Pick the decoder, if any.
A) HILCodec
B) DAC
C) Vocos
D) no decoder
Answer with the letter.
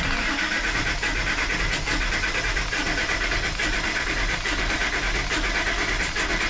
D